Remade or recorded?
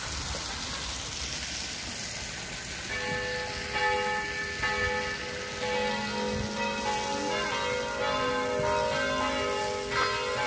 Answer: recorded